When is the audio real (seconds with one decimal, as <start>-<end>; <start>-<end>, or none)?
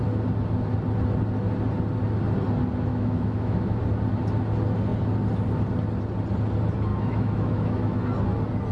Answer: 0.0-2.9; 3.8-6.9; 8.0-8.7